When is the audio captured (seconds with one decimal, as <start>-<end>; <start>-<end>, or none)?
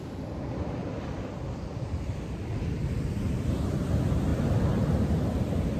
0.0-0.8; 2.9-4.3; 4.9-5.8